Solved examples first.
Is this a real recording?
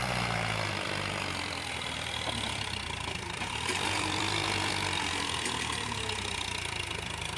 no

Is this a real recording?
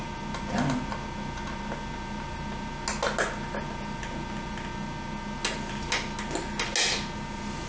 yes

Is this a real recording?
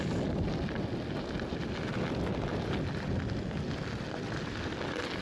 yes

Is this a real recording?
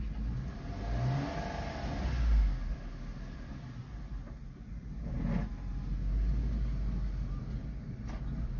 yes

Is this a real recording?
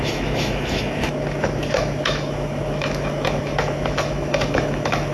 no